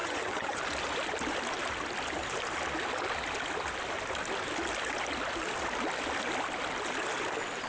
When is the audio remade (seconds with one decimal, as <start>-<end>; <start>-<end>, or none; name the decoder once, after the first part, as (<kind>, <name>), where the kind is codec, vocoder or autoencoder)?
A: 0.0-0.6 (vocoder, HiFi-GAN)